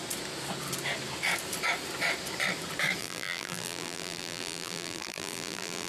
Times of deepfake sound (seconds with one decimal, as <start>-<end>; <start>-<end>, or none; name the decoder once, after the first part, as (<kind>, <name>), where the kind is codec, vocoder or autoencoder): 3.0-5.9 (vocoder, BigVGAN v2)